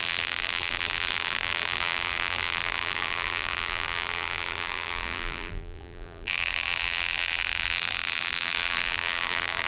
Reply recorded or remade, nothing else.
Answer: remade